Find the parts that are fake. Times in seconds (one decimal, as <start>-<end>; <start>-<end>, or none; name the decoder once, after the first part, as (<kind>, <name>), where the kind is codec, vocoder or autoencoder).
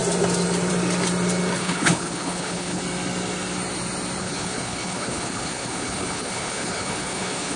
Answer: 1.6-2.8 (codec, HILCodec); 4.2-7.6